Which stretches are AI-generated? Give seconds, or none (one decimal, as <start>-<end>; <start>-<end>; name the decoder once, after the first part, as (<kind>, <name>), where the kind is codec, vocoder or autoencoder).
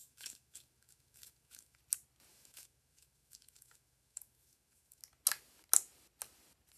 0.0-1.8 (autoencoder, DAC-VAE); 2.3-5.0